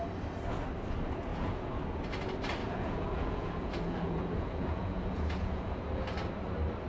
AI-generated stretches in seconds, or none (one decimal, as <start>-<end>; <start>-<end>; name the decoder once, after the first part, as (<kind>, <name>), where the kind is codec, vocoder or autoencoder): 1.3-1.8 (vocoder, Vocos); 2.6-5.8